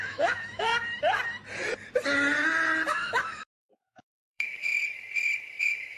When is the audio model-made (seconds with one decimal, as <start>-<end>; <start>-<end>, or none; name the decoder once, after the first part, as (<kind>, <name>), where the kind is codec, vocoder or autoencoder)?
0.0-0.7 (autoencoder, DAC-VAE); 2.9-4.7; 5.6-6.0